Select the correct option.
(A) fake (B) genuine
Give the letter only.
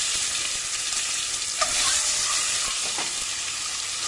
A